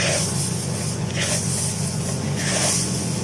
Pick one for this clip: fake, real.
fake